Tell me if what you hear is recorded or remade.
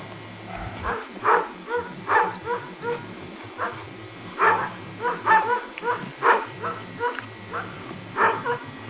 recorded